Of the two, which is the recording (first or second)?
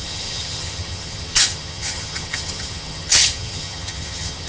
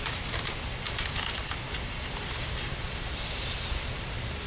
second